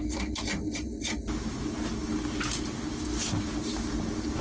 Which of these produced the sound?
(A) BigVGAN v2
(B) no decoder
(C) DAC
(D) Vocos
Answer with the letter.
B